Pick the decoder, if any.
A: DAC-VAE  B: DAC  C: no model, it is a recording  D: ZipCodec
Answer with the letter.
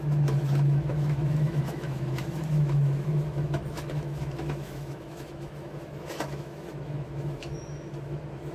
A